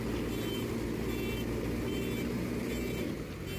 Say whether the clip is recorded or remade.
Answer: recorded